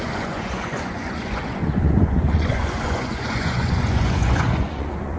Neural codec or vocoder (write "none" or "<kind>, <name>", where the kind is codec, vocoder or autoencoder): vocoder, Vocos